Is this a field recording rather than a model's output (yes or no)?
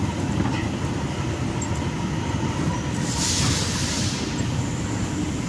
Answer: yes